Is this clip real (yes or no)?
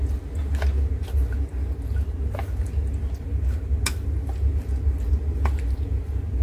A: yes